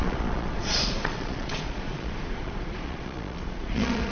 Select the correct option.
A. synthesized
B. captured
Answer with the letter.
A